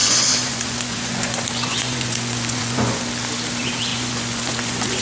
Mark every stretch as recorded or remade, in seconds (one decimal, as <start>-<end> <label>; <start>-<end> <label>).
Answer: 0.0-3.0 remade; 3.0-3.9 recorded; 3.9-5.0 remade